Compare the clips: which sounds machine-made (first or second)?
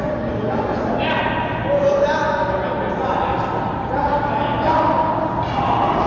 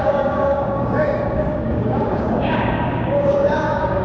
second